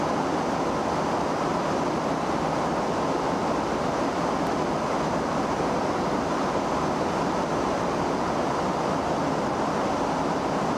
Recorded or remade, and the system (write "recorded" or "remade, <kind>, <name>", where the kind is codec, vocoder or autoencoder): recorded